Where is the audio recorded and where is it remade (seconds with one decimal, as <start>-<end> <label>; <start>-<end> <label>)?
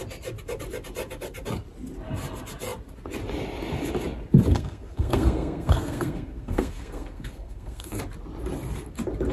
0.0-4.5 recorded; 4.5-8.0 remade; 8.0-9.3 recorded